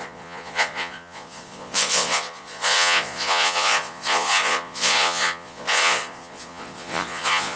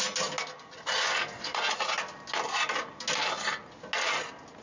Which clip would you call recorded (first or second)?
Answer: second